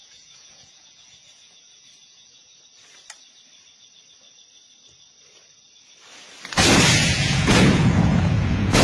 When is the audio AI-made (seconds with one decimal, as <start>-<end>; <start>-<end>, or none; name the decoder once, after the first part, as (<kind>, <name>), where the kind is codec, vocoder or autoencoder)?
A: 0.0-2.5 (vocoder, Vocos); 6.9-8.8